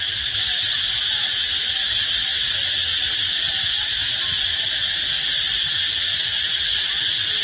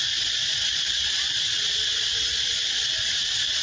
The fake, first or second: second